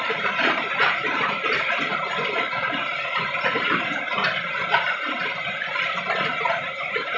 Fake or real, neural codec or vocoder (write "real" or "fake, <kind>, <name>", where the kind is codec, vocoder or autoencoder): fake, vocoder, BigVGAN v2